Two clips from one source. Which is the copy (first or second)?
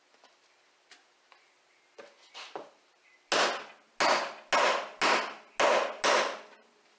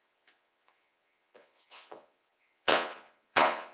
second